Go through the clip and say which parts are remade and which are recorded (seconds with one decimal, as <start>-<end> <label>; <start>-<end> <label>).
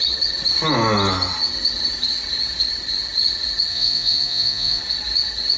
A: 0.0-3.7 recorded; 3.7-4.8 remade; 4.8-5.6 recorded